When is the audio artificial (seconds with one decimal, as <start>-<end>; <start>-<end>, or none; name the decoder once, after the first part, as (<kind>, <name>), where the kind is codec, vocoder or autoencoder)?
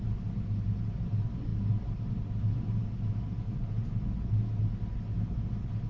none